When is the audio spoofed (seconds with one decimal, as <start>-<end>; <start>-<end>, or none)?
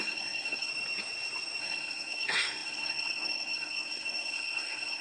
0.0-0.7; 1.6-5.0